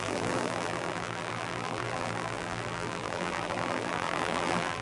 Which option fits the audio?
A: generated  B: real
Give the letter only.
A